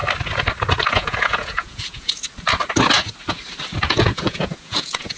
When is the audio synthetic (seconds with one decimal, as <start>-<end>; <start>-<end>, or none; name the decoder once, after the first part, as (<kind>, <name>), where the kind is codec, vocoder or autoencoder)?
0.9-2.2 (vocoder, Vocos); 3.9-5.2